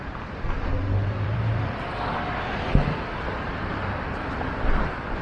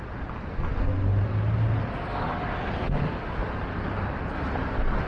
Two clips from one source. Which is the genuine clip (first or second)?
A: second